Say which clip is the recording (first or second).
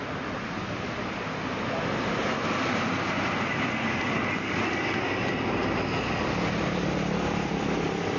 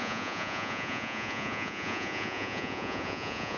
first